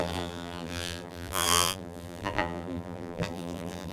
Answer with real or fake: fake